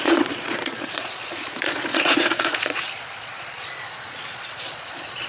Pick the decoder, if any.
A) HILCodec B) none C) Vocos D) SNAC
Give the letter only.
C